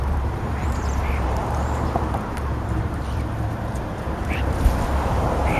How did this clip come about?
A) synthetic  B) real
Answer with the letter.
A